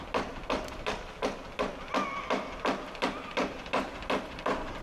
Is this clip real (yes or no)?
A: yes